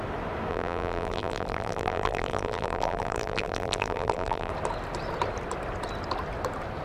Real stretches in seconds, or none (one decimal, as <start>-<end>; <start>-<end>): 0.0-0.5; 4.5-6.8